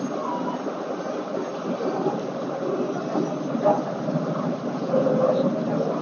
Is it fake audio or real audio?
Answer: real